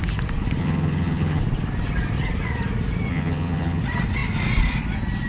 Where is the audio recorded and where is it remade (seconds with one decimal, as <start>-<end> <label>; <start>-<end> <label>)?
0.0-0.6 recorded; 0.6-1.4 remade; 1.4-3.1 recorded; 3.1-3.8 remade; 3.8-5.3 recorded